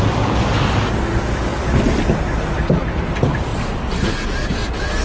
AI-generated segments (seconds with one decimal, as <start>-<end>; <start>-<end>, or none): none